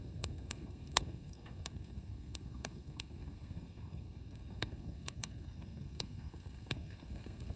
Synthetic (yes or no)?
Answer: yes